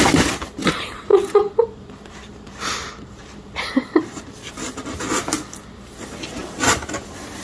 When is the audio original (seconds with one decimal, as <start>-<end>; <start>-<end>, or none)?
0.0-1.1; 4.7-7.4